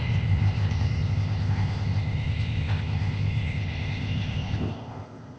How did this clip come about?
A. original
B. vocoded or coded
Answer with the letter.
B